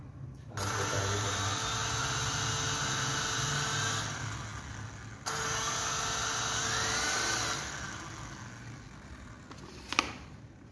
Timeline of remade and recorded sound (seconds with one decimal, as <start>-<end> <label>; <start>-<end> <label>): 0.0-10.7 recorded